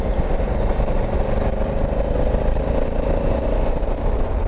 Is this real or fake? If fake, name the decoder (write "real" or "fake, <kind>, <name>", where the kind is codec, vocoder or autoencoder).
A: real